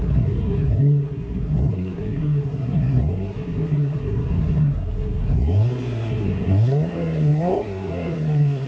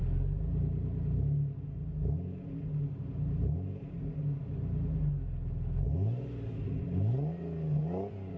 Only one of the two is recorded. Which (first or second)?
second